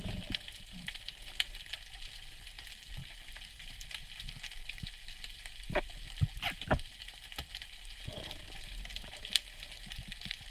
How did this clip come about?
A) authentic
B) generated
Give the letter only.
A